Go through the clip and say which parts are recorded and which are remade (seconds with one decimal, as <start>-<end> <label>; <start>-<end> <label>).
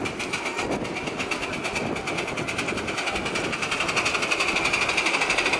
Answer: 0.0-5.6 recorded